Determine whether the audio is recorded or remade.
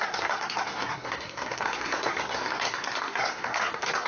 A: remade